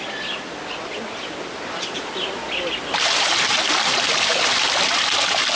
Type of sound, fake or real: real